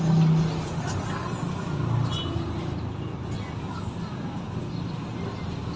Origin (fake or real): real